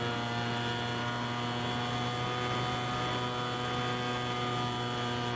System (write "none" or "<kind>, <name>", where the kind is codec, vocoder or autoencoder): none